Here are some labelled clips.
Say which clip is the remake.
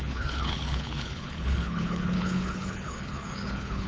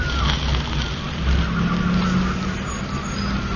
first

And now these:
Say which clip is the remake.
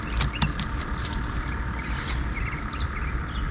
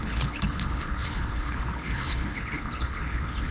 second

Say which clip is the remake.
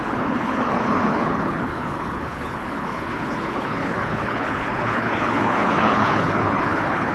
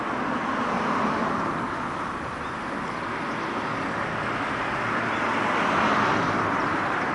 first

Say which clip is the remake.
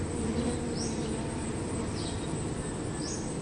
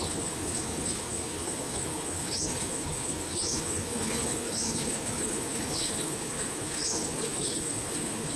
second